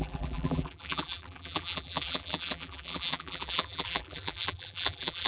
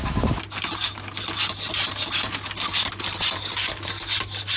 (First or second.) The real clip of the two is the second